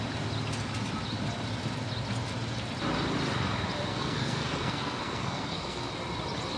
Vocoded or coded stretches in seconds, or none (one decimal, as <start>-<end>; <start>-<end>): 3.9-5.9